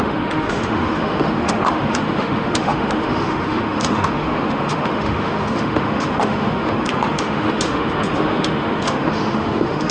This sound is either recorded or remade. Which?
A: remade